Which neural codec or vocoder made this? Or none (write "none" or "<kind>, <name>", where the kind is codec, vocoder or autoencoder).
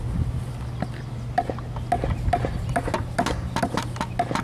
none